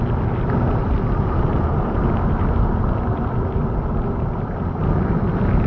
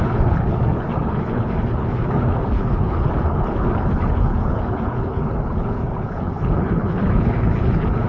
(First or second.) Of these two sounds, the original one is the first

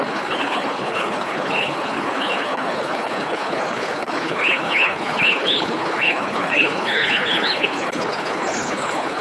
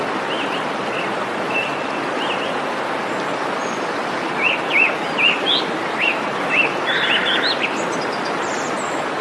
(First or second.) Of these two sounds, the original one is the second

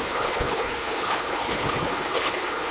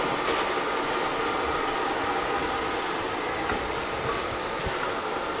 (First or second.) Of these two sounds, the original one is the second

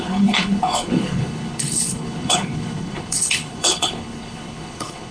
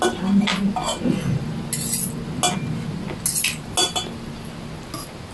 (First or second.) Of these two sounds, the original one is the second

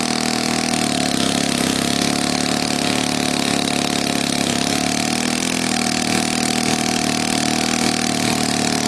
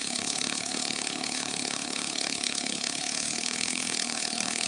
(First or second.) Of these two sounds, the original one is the first